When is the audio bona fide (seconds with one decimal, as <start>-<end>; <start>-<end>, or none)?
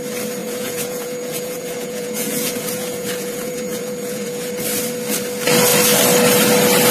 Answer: 0.0-0.4; 4.5-6.9